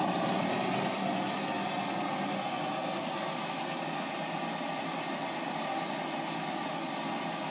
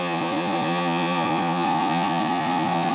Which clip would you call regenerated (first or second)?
second